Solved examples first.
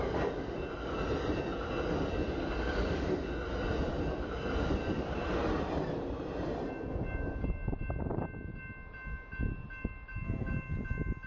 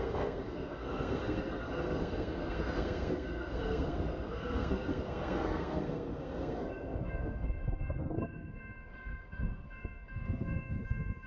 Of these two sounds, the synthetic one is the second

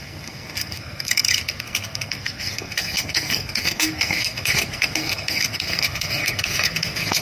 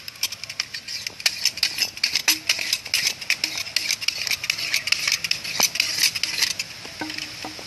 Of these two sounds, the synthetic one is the first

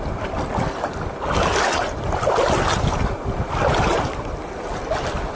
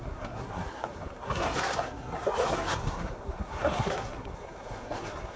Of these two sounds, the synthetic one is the second